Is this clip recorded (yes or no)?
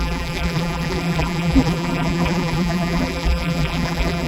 no